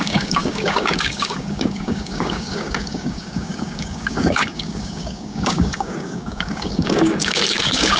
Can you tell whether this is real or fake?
fake